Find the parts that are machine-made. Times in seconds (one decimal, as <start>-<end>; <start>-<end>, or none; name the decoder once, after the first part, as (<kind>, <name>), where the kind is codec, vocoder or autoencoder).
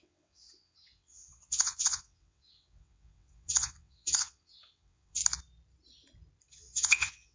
0.0-5.2 (vocoder, WaveNeXt); 6.5-7.3